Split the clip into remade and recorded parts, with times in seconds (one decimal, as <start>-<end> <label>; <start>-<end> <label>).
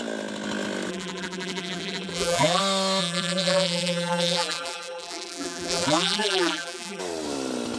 0.0-0.9 recorded; 0.9-2.6 remade; 2.6-3.0 recorded; 3.0-7.0 remade; 7.0-7.8 recorded